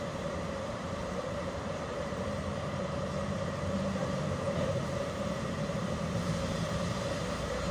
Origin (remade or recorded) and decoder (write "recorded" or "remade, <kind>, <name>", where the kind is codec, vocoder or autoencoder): remade, vocoder, BigVGAN v2